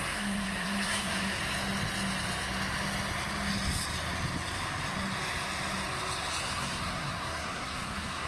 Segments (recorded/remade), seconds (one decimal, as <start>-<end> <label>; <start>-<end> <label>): 0.0-1.4 remade; 1.4-6.4 recorded; 6.4-8.3 remade